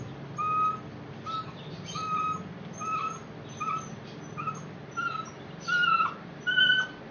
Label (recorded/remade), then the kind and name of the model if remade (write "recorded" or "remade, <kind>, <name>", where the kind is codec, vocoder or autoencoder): recorded